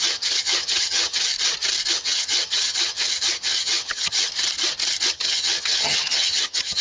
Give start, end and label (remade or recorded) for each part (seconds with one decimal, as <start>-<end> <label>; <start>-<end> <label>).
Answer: 0.0-1.3 remade; 1.3-1.9 recorded; 1.9-4.3 remade; 4.3-5.1 recorded; 5.1-6.8 remade